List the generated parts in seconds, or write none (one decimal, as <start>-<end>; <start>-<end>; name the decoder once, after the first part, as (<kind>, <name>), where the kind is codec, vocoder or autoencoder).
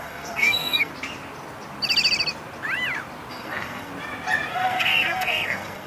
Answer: 0.0-0.9 (codec, SNAC); 3.3-3.9; 4.5-5.9